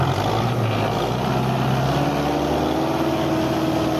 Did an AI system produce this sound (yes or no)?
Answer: no